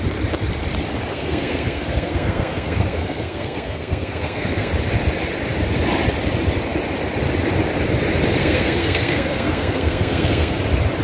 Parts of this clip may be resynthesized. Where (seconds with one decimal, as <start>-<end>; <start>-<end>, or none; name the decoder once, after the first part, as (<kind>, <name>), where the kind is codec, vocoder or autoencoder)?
1.1-4.7 (codec, SNAC); 8.4-10.6